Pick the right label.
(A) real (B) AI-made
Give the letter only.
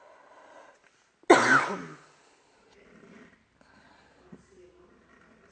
A